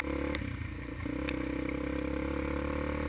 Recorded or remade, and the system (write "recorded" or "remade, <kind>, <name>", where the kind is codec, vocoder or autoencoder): recorded